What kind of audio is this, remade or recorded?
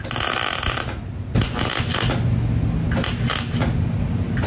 recorded